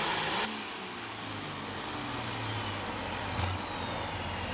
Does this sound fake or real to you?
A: real